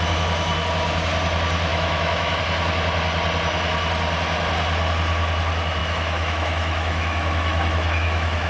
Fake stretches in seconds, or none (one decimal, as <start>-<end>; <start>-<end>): 1.7-2.4; 5.8-8.5